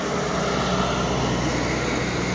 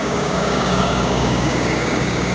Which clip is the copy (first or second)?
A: second